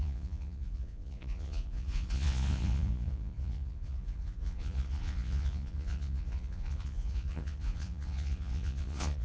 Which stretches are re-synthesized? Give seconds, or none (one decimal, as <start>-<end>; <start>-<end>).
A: 0.0-9.2